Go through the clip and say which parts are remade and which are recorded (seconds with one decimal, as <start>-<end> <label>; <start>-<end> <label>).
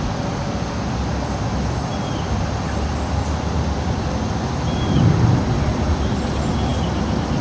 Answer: 0.0-7.4 recorded